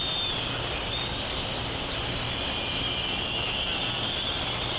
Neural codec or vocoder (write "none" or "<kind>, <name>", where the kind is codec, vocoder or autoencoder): none